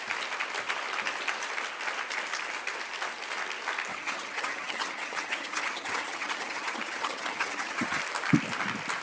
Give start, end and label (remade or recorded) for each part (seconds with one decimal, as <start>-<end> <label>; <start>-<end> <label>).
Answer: 0.0-3.9 recorded; 3.9-8.0 remade; 8.0-9.0 recorded

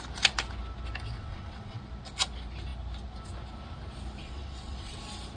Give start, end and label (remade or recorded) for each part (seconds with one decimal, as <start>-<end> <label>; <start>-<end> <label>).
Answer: 0.0-1.2 recorded; 1.2-1.8 remade; 1.8-4.2 recorded; 4.2-5.0 remade; 5.0-5.4 recorded

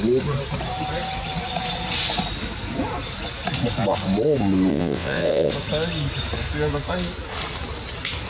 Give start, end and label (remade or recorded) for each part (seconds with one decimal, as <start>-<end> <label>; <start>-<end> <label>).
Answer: 0.0-4.7 recorded; 4.7-5.5 remade; 5.5-8.3 recorded

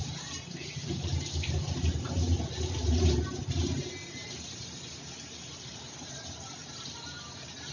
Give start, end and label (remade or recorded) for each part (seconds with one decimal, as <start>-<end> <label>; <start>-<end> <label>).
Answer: 0.0-0.8 recorded; 0.8-2.0 remade; 2.0-7.7 recorded

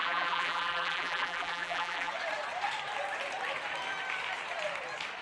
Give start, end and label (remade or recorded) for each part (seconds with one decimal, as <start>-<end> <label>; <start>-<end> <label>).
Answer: 0.0-2.1 remade; 2.1-5.2 recorded

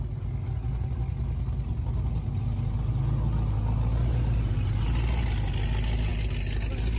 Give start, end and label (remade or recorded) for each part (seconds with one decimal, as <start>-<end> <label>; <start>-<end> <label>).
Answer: 0.0-7.0 recorded